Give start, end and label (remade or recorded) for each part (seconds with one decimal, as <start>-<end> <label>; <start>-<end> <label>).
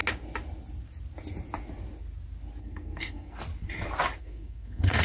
0.0-2.6 recorded; 2.6-3.5 remade; 3.5-4.2 recorded; 4.2-5.0 remade